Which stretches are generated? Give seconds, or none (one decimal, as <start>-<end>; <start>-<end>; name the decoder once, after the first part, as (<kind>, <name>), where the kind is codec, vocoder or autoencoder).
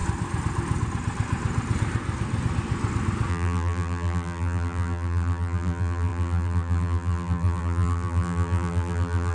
3.3-9.3 (vocoder, BigVGAN v2)